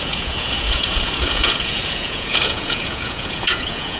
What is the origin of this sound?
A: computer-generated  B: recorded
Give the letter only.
A